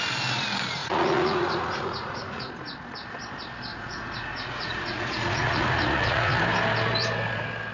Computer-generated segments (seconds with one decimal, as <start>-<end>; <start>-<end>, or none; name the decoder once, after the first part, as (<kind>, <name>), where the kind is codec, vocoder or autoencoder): 0.8-2.5 (vocoder, Vocos); 3.7-6.4